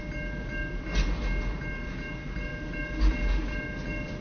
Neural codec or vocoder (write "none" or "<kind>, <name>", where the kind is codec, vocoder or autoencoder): none